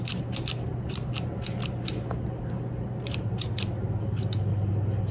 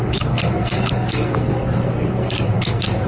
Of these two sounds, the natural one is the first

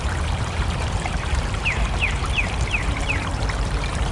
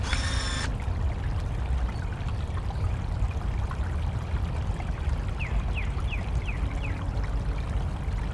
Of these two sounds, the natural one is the second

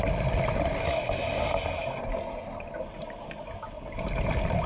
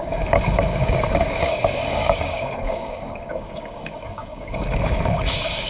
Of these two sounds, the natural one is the first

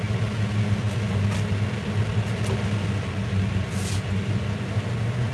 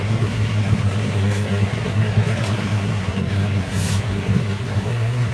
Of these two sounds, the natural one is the first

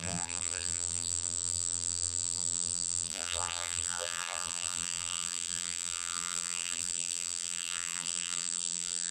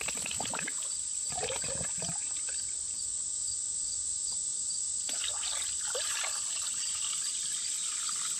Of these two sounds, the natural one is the second